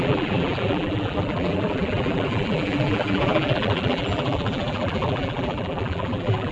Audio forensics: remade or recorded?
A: remade